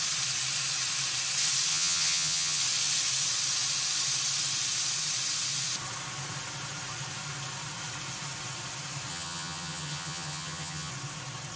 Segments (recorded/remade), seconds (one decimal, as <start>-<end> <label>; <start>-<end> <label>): 0.0-1.7 recorded; 1.7-2.6 remade; 2.6-9.1 recorded; 9.1-10.9 remade; 10.9-11.6 recorded